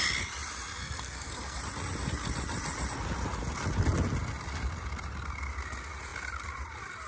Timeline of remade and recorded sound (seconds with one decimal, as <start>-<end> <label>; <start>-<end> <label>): 0.0-0.8 recorded; 0.8-1.6 remade; 1.6-7.1 recorded